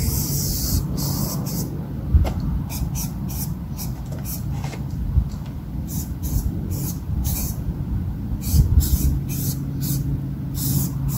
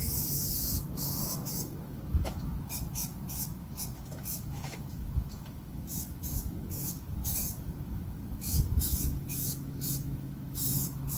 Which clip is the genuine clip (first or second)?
first